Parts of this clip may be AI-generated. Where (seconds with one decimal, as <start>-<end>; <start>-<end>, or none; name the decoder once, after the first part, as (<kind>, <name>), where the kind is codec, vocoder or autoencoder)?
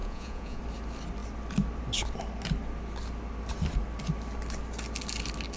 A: 0.0-0.6 (vocoder, Vocos)